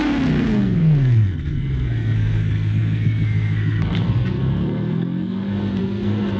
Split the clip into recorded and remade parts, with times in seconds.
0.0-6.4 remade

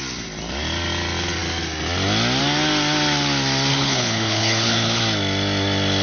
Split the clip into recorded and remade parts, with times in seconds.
0.0-3.7 recorded; 3.7-5.0 remade; 5.0-6.0 recorded

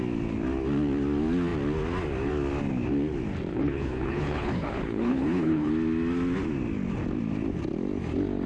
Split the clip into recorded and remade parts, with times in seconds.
0.0-3.5 recorded; 3.5-5.7 remade; 5.7-8.5 recorded